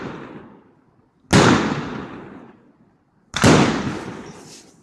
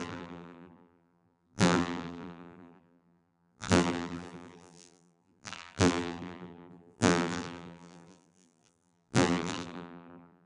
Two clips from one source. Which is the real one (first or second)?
first